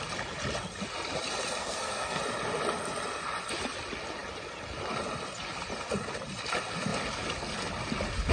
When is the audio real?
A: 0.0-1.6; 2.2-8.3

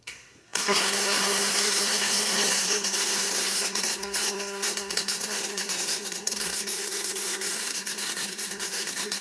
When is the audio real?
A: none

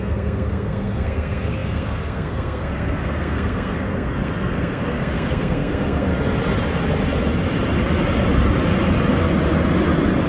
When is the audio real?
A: 6.1-10.3

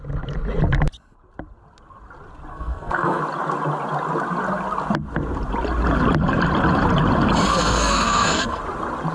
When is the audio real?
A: 0.0-2.5; 3.2-7.5; 8.6-9.1

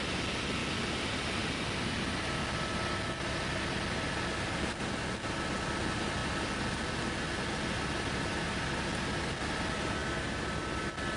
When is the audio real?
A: 0.0-11.2

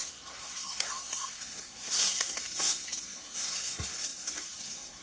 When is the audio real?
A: none